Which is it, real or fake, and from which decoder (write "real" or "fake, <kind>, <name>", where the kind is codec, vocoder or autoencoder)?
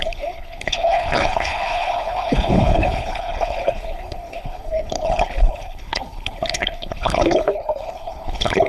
fake, codec, HILCodec